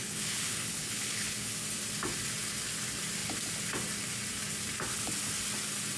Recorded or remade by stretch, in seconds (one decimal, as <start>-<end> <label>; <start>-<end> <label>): 0.0-1.5 remade; 1.5-6.0 recorded